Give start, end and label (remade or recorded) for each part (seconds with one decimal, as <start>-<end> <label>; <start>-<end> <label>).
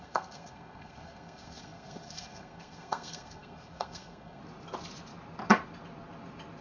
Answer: 0.0-4.4 remade; 4.4-6.6 recorded